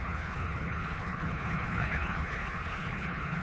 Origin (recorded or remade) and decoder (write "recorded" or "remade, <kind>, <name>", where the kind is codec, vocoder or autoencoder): remade, codec, HILCodec